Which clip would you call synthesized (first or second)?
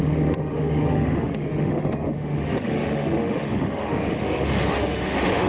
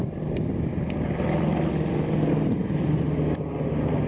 first